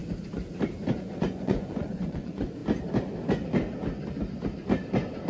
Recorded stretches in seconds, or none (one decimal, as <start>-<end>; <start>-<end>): 0.0-1.0; 2.6-5.3